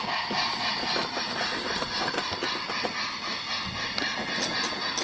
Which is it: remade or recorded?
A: recorded